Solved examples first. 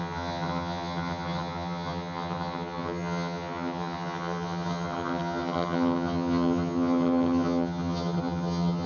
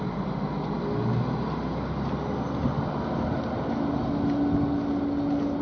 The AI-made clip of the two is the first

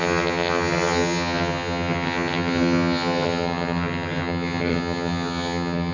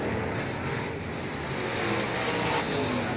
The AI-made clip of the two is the first